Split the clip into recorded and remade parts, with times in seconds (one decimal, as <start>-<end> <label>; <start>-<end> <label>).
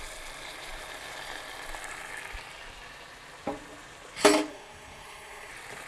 0.0-4.5 recorded; 4.5-5.5 remade; 5.5-5.9 recorded